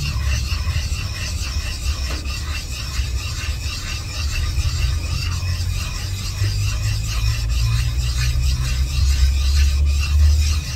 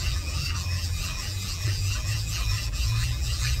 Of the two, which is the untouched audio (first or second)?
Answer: first